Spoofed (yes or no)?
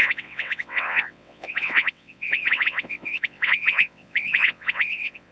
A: yes